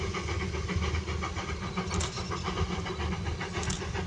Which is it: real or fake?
real